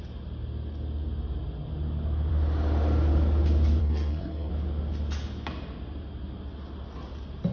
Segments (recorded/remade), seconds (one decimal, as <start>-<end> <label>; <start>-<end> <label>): 0.0-3.8 recorded; 3.8-4.5 remade; 4.5-7.5 recorded